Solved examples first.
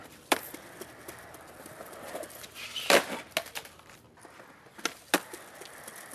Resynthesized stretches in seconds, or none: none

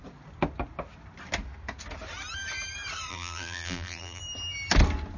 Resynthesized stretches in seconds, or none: 3.1-4.2 (vocoder, BigVGAN v2)

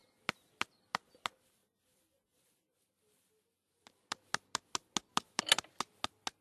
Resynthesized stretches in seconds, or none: none

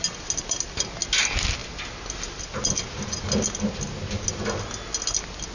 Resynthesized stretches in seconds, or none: none